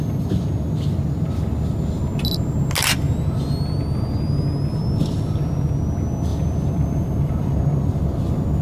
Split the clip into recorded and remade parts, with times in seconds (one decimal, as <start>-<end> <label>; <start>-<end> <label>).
0.0-6.3 recorded; 6.3-7.6 remade; 7.6-8.6 recorded